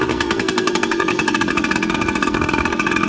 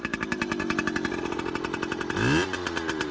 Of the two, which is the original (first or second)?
second